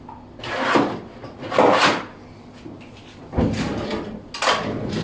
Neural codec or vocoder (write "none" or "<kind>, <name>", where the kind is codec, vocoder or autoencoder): none